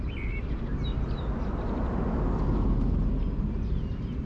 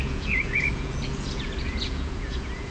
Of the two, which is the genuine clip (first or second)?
first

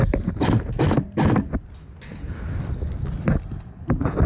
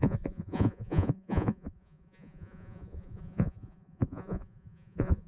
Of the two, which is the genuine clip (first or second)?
first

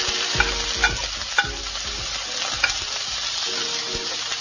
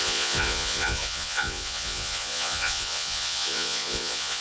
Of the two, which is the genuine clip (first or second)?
first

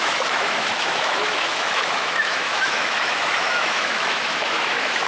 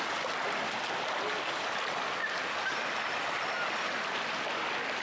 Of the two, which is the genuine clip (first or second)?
second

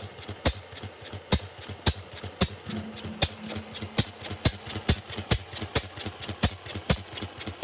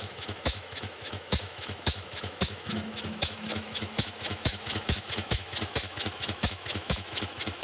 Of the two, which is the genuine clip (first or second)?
first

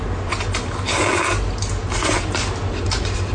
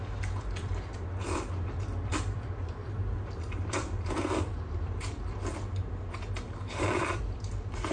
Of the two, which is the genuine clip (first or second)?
first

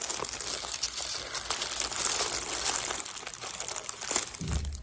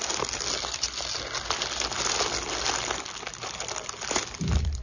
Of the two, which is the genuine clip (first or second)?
first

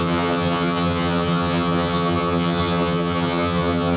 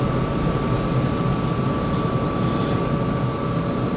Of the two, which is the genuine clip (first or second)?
second